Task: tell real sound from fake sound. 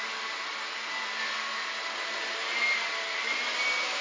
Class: real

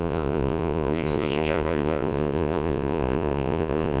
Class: fake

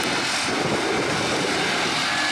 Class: real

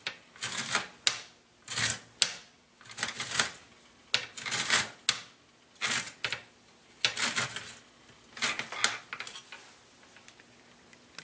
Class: real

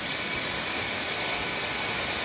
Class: real